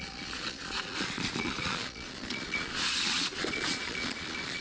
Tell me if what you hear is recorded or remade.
remade